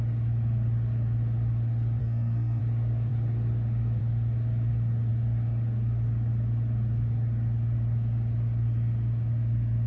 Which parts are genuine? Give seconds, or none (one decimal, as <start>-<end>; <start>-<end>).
0.0-2.0; 2.6-9.9